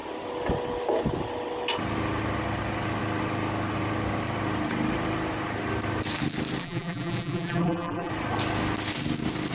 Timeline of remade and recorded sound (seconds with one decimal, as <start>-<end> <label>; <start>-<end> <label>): 0.0-6.6 recorded; 6.6-8.1 remade; 8.1-9.5 recorded